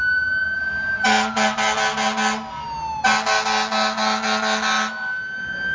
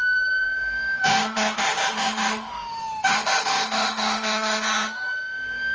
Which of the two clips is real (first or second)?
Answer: first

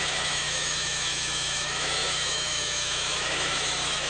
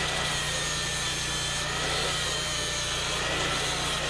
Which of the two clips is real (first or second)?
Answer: second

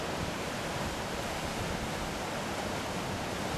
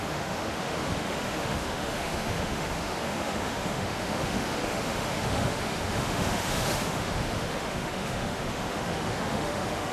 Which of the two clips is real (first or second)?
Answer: first